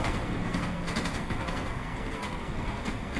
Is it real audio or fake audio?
fake